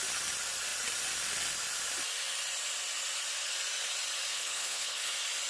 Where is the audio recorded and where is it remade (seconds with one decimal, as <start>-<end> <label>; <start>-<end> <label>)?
0.0-4.3 recorded; 4.3-5.1 remade; 5.1-5.5 recorded